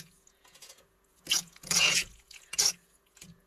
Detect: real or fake fake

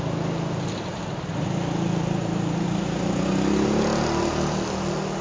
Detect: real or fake real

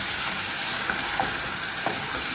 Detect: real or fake fake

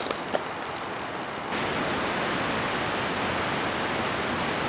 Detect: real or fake real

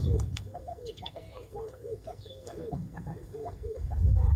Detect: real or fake fake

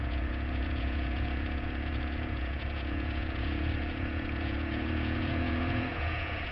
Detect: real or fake fake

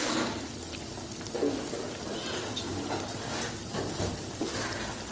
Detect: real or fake real